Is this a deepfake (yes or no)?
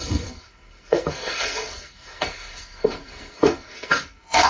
yes